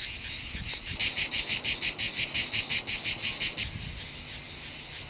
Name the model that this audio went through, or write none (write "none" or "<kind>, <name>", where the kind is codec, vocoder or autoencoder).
none